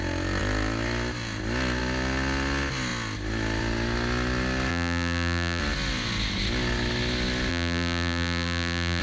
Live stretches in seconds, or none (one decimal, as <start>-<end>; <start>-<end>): 0.0-4.7; 5.6-7.5